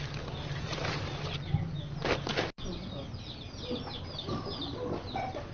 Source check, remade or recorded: recorded